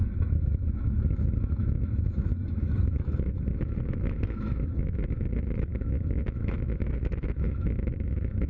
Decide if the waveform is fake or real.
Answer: fake